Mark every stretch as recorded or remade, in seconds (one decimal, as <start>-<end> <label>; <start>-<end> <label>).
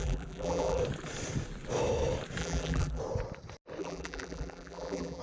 0.0-0.8 remade; 0.8-2.4 recorded; 2.4-3.0 remade; 3.0-3.8 recorded; 3.8-5.2 remade